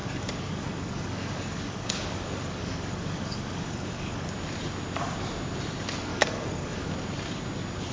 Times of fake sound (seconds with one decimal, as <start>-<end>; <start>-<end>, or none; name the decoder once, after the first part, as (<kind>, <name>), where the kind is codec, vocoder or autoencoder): 0.0-4.3 (codec, DAC); 6.1-6.9